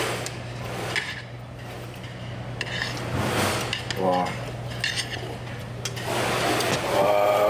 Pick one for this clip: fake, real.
real